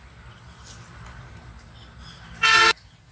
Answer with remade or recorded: recorded